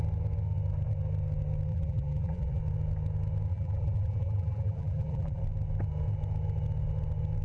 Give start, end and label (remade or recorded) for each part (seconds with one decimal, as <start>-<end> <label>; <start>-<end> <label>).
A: 0.0-1.7 recorded; 1.7-2.6 remade; 2.6-3.5 recorded; 3.5-5.4 remade; 5.4-7.4 recorded